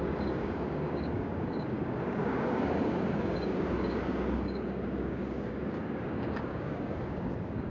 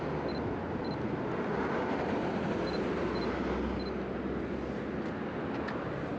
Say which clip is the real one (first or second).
second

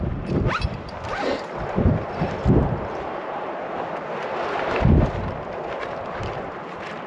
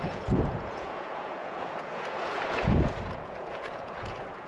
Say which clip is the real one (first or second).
first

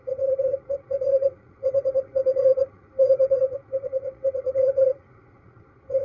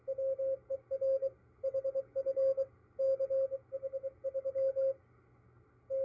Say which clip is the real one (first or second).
second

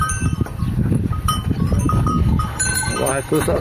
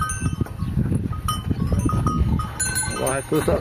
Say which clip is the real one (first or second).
second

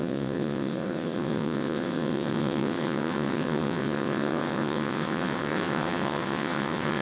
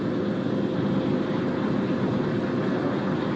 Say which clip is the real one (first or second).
second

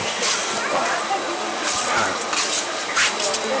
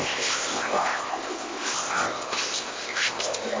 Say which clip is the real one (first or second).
first